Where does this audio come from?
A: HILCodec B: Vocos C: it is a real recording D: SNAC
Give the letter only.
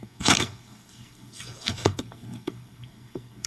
D